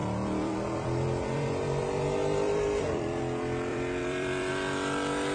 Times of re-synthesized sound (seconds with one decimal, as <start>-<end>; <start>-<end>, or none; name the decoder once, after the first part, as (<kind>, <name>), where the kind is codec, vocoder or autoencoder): 0.0-3.2 (vocoder, BigVGAN v2); 3.7-4.5